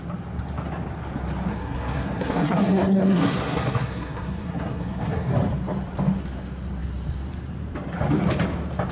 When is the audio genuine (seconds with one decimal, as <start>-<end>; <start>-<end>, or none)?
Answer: 0.0-1.5; 5.3-8.9